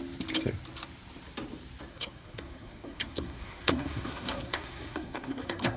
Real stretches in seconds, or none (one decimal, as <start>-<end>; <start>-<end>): 0.0-1.9